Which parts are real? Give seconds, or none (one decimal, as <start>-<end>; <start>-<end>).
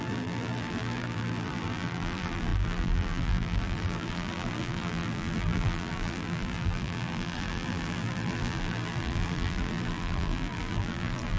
none